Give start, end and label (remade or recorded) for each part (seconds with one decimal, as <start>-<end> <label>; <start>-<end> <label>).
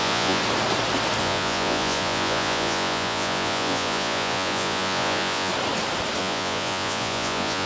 0.0-0.4 remade; 0.4-1.2 recorded; 1.2-5.5 remade; 5.5-6.2 recorded; 6.2-7.7 remade